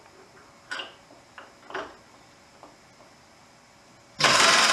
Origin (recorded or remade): recorded